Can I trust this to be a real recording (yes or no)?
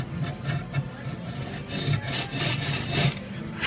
yes